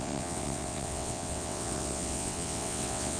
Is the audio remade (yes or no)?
yes